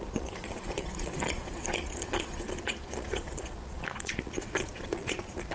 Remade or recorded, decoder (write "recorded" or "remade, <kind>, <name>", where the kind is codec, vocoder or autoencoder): remade, vocoder, Vocos